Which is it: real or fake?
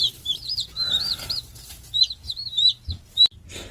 real